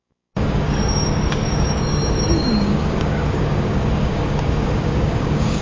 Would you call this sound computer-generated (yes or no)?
yes